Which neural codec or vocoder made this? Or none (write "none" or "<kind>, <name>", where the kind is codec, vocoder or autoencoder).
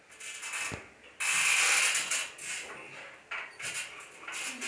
none